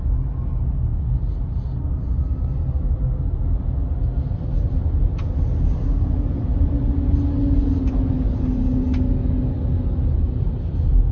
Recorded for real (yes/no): yes